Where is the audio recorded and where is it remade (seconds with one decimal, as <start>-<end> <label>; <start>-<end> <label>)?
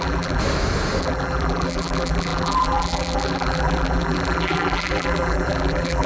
0.0-0.4 remade; 0.4-1.0 recorded; 1.0-6.1 remade